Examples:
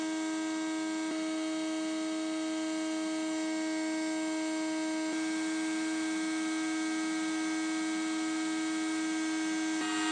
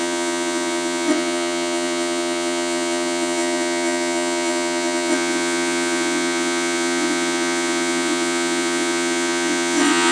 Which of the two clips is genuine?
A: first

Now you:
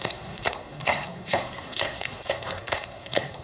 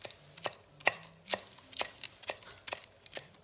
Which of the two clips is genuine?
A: second